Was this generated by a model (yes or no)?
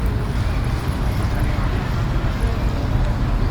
no